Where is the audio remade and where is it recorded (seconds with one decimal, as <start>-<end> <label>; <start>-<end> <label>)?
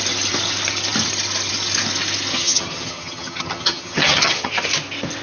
0.0-2.3 recorded; 2.3-4.5 remade; 4.5-5.2 recorded